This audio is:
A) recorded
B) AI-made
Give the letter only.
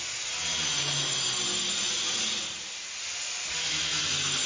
A